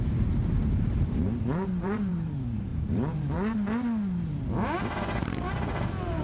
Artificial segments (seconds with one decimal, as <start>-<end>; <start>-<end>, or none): 0.0-6.2